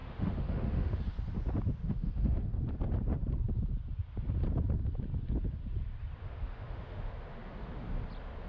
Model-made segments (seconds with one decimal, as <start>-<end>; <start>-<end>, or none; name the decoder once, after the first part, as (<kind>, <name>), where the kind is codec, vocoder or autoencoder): 0.0-1.0 (autoencoder, DAC-VAE); 1.8-2.6; 6.2-7.1

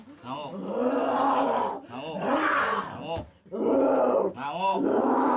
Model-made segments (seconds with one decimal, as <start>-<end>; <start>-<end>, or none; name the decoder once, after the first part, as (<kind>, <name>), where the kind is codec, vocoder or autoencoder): 4.7-5.4 (autoencoder, DAC-VAE)

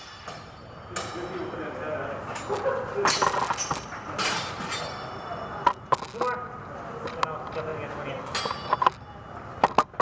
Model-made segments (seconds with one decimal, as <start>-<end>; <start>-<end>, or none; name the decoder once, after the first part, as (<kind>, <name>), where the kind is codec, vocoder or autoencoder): none

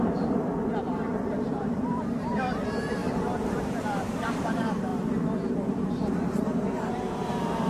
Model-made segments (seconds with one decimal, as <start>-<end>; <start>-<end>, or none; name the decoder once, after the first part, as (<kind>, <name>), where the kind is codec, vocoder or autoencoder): 0.0-0.5 (vocoder, BigVGAN v2); 1.4-4.9; 5.9-7.7

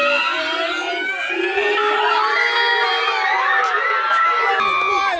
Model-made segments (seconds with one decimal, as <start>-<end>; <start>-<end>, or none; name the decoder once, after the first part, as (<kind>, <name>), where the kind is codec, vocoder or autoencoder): none

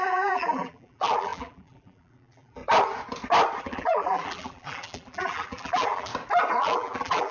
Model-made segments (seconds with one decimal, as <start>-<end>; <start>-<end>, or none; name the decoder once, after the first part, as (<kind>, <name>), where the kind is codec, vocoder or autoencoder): 0.0-2.6 (vocoder, BigVGAN v2); 3.6-6.1; 6.6-7.3

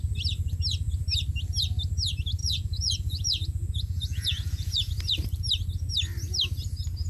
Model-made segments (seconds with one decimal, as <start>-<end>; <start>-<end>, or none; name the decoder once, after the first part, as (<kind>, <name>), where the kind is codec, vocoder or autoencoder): 2.4-4.9 (vocoder, Vocos)

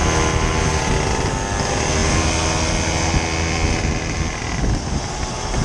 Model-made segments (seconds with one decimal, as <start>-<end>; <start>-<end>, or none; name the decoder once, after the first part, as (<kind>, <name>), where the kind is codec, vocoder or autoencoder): none